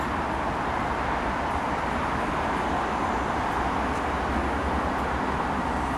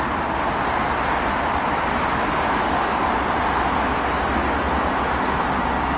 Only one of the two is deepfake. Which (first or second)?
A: first